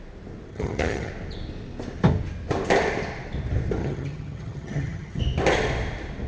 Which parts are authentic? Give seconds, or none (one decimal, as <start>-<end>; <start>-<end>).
0.0-0.5; 1.1-3.8; 5.2-6.3